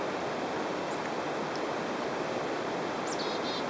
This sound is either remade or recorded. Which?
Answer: recorded